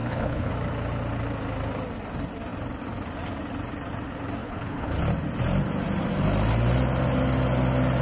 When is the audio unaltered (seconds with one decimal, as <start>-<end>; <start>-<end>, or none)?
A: 0.5-4.4; 5.0-8.0